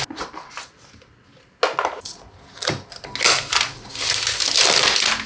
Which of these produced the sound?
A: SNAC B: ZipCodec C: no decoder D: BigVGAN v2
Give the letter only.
C